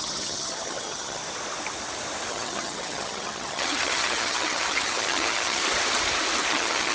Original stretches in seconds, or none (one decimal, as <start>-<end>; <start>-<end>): 1.2-2.3; 5.6-6.5